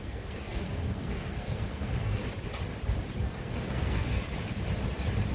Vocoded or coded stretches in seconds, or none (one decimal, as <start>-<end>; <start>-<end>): 0.0-2.2; 3.2-4.2